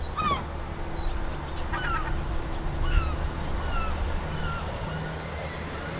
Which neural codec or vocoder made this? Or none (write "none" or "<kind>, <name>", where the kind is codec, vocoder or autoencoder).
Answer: none